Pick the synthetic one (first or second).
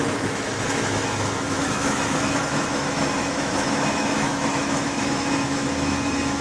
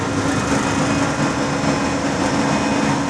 first